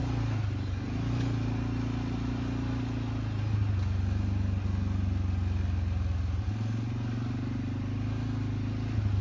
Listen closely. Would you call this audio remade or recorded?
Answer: recorded